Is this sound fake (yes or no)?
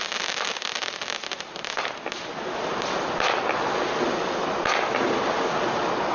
no